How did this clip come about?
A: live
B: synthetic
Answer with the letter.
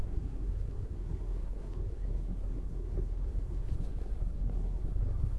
B